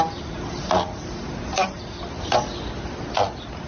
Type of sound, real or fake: fake